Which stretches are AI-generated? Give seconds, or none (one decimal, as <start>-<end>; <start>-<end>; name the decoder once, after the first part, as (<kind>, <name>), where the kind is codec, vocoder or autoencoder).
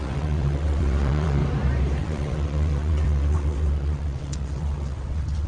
0.0-1.4 (vocoder, WaveNeXt); 2.0-5.5